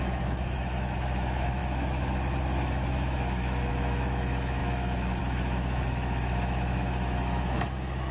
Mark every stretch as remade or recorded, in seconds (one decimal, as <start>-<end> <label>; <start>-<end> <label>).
0.0-8.1 remade